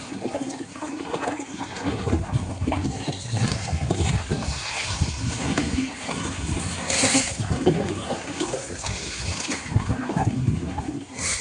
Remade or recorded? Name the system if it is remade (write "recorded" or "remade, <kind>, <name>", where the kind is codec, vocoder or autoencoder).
remade, codec, SNAC